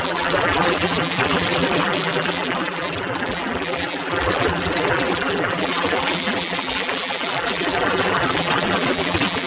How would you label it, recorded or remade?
remade